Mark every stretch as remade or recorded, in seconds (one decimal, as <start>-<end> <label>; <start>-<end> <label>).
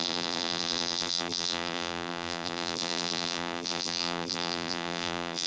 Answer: 0.0-5.5 remade